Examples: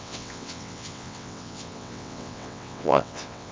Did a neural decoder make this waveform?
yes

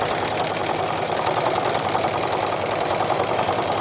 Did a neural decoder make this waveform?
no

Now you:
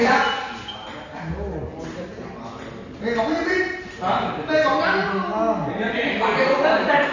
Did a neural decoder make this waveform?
no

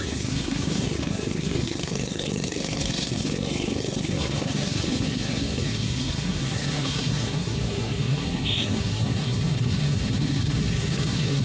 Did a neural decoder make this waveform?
yes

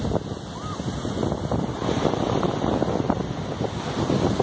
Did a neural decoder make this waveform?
no